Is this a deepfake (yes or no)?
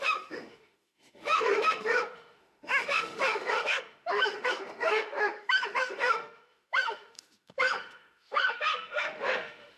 yes